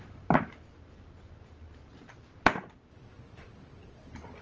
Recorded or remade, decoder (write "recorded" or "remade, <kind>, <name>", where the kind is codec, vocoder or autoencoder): recorded